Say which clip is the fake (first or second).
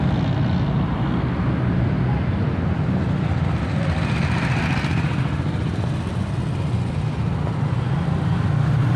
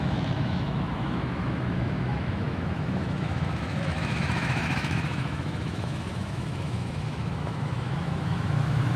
second